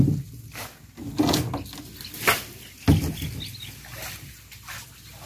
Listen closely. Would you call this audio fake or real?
real